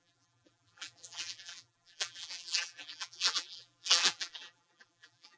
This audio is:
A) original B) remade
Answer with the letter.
B